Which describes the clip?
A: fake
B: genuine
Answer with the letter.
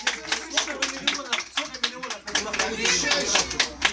B